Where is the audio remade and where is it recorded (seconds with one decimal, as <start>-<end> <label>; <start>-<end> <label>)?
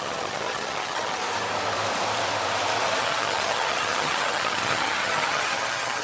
0.0-1.2 remade; 1.2-3.0 recorded; 3.0-6.0 remade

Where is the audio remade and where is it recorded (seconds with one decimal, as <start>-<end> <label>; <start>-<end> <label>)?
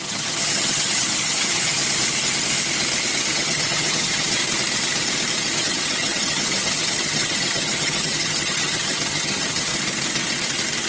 0.0-1.8 remade; 1.8-3.2 recorded; 3.2-4.4 remade; 4.4-5.6 recorded; 5.6-9.7 remade; 9.7-10.9 recorded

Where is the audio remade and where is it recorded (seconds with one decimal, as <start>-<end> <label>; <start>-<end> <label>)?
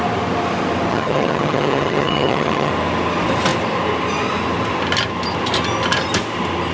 0.0-0.9 recorded; 0.9-2.7 remade; 2.7-6.7 recorded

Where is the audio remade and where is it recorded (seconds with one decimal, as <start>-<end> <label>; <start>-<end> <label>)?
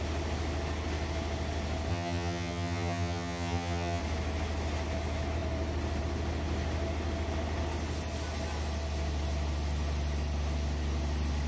0.0-1.9 recorded; 1.9-4.0 remade; 4.0-11.5 recorded